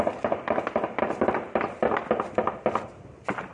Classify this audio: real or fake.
real